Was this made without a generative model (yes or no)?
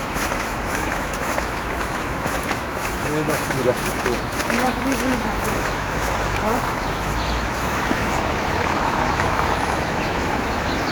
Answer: no